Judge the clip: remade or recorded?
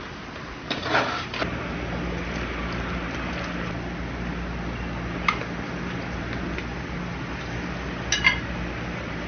recorded